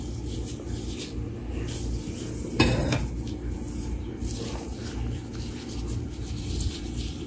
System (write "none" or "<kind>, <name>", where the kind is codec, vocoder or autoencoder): none